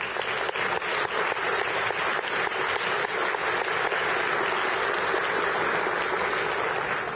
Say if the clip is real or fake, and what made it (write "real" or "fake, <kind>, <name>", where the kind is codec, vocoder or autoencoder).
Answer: real